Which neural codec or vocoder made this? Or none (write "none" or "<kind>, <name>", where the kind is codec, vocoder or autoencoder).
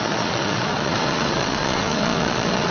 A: vocoder, Vocos